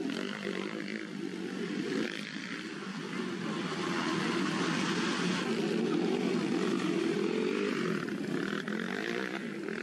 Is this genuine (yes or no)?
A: yes